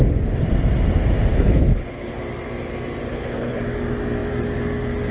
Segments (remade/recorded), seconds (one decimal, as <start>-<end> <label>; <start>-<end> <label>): 0.0-1.3 recorded; 1.3-2.2 remade; 2.2-3.1 recorded; 3.1-3.6 remade; 3.6-5.1 recorded

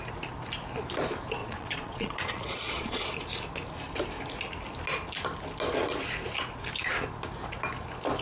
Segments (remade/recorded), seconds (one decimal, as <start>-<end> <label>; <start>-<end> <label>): 0.0-1.4 recorded; 1.4-3.0 remade; 3.0-8.2 recorded

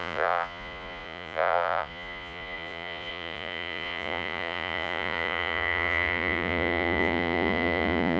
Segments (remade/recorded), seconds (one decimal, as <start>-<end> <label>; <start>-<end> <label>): 0.0-8.2 remade

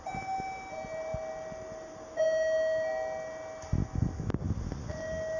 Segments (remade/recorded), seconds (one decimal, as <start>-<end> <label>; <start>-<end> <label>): 0.0-5.4 recorded

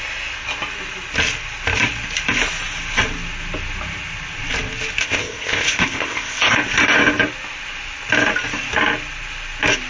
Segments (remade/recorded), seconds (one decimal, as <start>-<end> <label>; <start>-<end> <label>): 0.0-5.0 recorded; 5.0-6.5 remade; 6.5-9.9 recorded